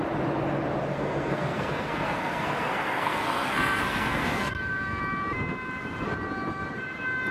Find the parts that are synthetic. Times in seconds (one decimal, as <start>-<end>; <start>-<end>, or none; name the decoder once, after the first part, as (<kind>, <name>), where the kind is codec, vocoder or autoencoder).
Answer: 0.9-5.0 (codec, SNAC)